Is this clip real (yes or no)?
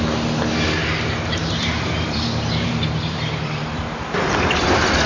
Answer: no